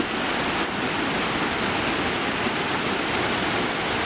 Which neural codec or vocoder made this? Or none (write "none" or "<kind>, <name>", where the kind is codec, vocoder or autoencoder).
none